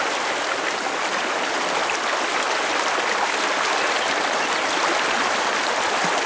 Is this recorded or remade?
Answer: recorded